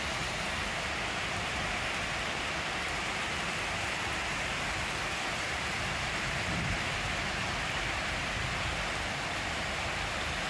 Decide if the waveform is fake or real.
fake